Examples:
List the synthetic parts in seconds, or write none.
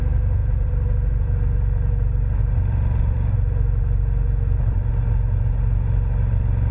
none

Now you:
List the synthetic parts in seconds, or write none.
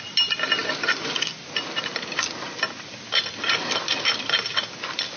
none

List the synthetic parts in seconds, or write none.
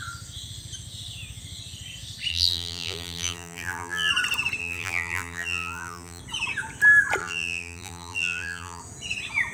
2.3-4.1 (vocoder, BigVGAN v2); 4.6-6.2; 7.2-8.8